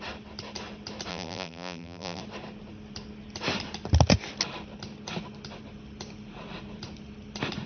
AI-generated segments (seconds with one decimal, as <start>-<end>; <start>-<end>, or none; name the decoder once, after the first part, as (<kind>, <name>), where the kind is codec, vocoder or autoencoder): 1.1-2.2 (vocoder, BigVGAN v2)